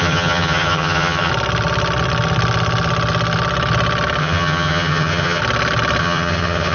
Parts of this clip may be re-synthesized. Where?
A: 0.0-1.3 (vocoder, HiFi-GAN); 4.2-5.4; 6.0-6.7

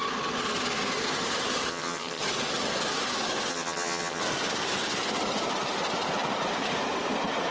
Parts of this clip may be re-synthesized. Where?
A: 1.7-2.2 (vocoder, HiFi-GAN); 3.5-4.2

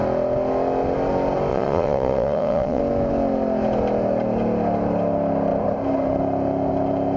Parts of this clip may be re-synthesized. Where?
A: 1.5-2.8 (vocoder, Vocos)

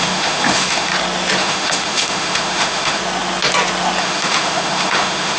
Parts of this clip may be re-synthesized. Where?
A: 0.0-0.9 (autoencoder, DAC-VAE); 1.4-3.0; 4.0-5.4